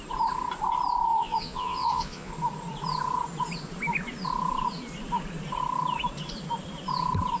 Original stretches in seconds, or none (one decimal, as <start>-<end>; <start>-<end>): 0.0-1.1; 2.3-7.4